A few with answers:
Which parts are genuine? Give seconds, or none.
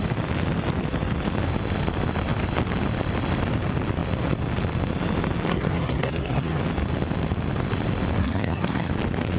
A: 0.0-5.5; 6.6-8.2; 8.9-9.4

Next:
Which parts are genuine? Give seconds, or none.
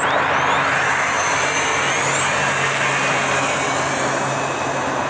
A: 0.0-5.1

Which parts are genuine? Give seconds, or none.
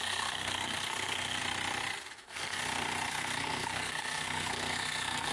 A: 1.4-2.1; 2.6-3.1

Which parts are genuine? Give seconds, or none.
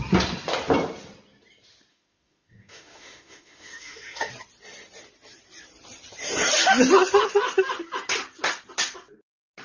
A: 0.0-1.9; 4.3-9.6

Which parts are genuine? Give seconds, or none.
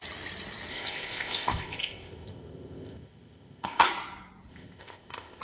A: 0.0-0.7; 3.9-4.5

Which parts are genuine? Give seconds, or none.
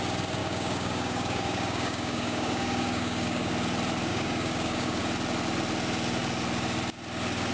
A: 0.0-0.4; 3.5-4.1; 5.0-7.5